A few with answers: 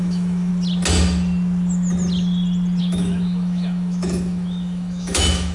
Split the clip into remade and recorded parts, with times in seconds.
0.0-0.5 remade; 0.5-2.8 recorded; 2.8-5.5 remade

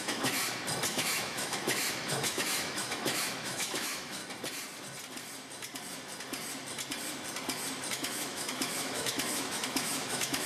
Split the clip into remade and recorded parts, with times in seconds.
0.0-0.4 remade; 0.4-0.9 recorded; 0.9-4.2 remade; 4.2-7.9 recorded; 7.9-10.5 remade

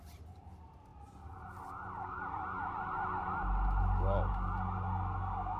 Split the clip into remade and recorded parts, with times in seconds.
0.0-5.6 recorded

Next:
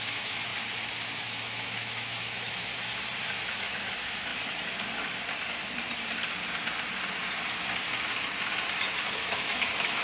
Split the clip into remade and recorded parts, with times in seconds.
0.0-0.5 remade; 0.5-1.2 recorded; 1.2-2.7 remade; 2.7-3.5 recorded; 3.5-4.3 remade; 4.3-9.1 recorded; 9.1-10.0 remade

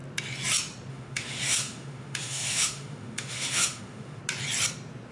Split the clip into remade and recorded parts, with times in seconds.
0.0-0.9 recorded; 0.9-4.2 remade; 4.2-5.1 recorded

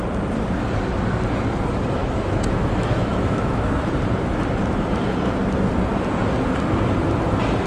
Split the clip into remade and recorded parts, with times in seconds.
0.0-2.0 recorded; 2.0-3.7 remade; 3.7-7.7 recorded

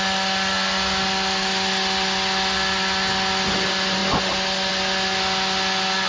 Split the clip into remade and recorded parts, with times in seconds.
0.0-6.1 recorded

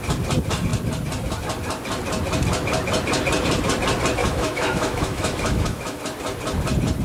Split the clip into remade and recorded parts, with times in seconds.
0.0-4.2 recorded; 4.2-6.0 remade; 6.0-7.0 recorded